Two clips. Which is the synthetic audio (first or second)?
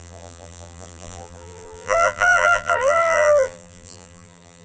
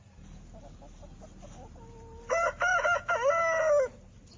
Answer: first